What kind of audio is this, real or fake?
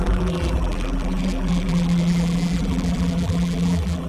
fake